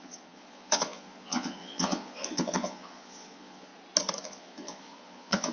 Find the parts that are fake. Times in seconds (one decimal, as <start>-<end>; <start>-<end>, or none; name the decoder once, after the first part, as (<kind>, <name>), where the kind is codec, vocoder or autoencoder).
0.0-3.7 (vocoder, Vocos); 4.2-5.5